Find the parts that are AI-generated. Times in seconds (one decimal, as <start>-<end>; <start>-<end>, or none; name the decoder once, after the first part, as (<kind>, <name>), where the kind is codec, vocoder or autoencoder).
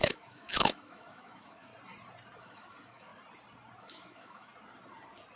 0.0-1.7 (autoencoder, DAC-VAE); 2.4-3.1; 3.8-4.5